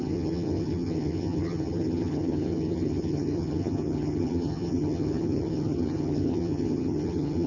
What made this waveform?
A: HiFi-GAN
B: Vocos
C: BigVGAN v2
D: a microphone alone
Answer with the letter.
A